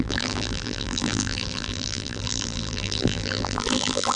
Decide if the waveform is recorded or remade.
remade